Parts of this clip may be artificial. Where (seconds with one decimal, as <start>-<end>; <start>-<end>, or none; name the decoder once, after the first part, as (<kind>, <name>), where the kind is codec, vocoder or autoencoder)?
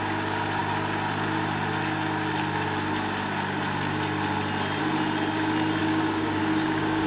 5.8-7.1 (codec, DAC)